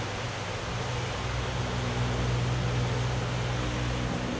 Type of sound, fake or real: real